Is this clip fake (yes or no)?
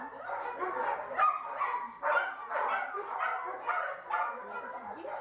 no